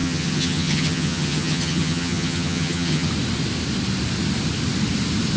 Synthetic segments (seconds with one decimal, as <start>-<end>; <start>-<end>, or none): 0.0-3.1